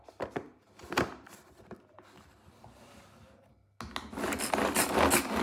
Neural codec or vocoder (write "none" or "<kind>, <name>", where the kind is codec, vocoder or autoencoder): none